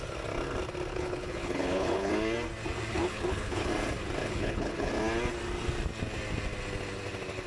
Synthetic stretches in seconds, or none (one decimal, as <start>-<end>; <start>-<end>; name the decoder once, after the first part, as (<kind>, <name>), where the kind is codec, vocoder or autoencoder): 0.9-2.1 (codec, HILCodec); 2.9-3.7; 4.2-4.9